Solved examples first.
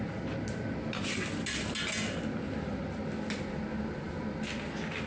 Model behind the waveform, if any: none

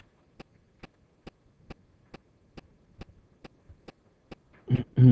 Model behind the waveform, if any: none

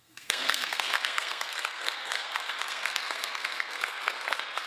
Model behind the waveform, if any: codec, SNAC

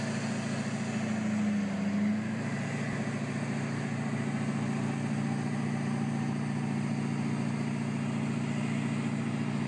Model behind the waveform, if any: none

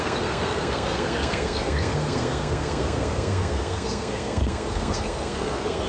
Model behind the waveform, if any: codec, SNAC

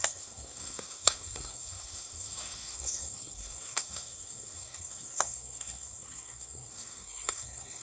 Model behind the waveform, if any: codec, SNAC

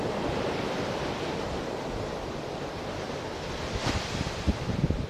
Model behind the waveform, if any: none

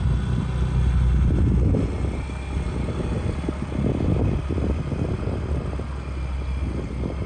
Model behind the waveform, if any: none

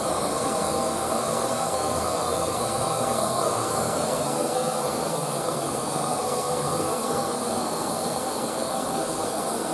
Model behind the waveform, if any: codec, SNAC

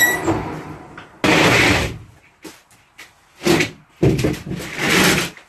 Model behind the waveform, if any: none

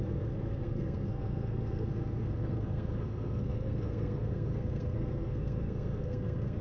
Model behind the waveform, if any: codec, SNAC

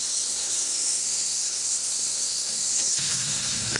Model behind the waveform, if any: codec, SNAC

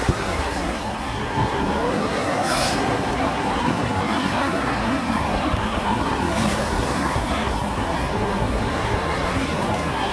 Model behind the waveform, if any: codec, SNAC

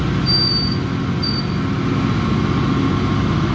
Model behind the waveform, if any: none